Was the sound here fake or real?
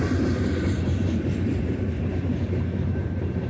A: fake